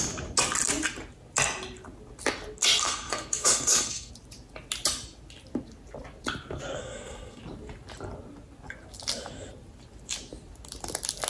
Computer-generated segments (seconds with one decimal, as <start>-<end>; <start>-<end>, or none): 2.8-4.1; 6.8-7.4